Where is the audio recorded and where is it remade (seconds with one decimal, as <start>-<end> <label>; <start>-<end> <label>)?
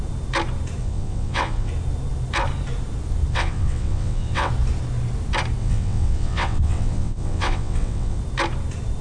0.0-0.8 recorded; 0.8-1.7 remade; 1.7-3.3 recorded; 3.3-4.5 remade; 4.5-5.6 recorded; 5.6-8.2 remade; 8.2-9.0 recorded